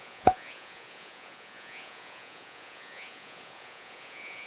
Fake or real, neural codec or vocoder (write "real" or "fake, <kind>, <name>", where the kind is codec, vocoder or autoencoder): fake, vocoder, Vocos